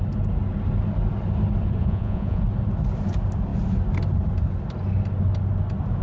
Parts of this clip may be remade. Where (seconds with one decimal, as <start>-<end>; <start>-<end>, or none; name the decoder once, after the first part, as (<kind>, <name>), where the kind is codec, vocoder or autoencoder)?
1.8-2.4 (vocoder, Vocos)

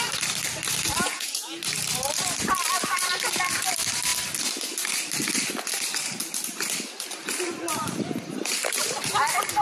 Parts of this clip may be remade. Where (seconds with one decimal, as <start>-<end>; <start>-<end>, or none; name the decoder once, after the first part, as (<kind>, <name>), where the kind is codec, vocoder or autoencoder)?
1.0-1.6 (vocoder, Vocos)